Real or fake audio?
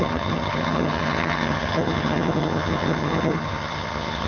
fake